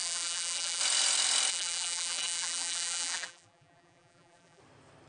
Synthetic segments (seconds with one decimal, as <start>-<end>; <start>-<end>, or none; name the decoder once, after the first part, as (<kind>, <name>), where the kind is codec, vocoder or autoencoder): 0.0-0.8 (vocoder, BigVGAN v2); 1.5-4.6